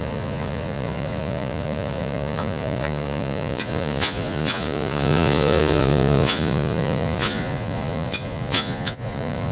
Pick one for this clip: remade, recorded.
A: remade